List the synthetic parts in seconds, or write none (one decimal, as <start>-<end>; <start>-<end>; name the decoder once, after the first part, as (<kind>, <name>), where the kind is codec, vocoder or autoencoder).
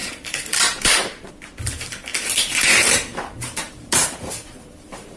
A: 0.0-1.3 (vocoder, BigVGAN v2); 2.1-5.2